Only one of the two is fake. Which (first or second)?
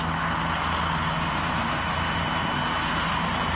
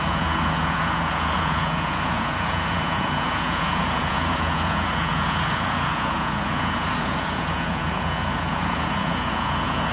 second